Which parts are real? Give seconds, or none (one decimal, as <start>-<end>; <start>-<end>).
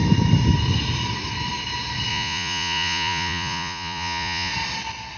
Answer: 0.0-2.1; 4.5-5.2